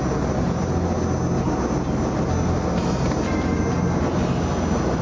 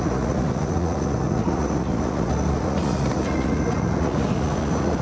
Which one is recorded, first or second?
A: first